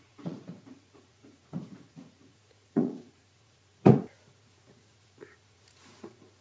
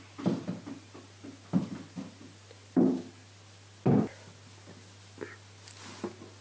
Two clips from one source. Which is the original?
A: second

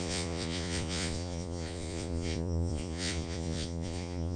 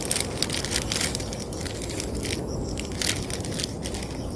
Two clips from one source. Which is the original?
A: second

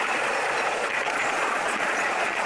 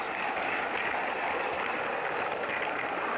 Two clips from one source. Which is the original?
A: second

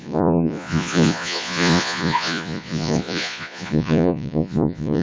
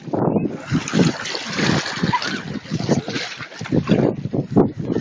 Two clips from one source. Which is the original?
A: second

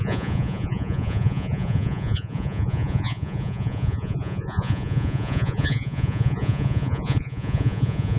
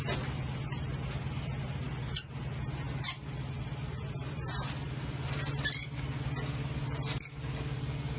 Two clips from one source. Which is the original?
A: second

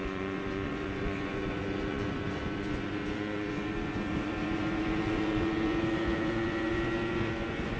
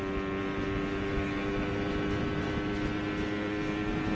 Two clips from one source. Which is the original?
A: second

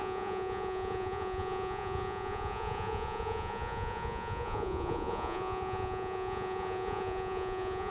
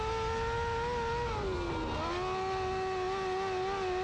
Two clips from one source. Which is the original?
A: second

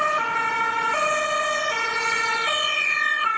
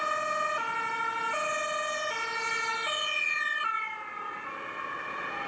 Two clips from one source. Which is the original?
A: second